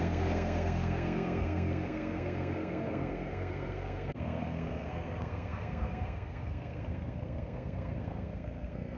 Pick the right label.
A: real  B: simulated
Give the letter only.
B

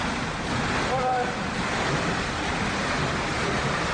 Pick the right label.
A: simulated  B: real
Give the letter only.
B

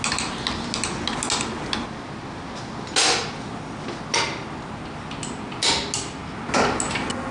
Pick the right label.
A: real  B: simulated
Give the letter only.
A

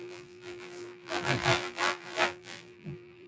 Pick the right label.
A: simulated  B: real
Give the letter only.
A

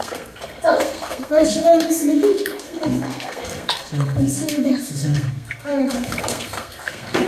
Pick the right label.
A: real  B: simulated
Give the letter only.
B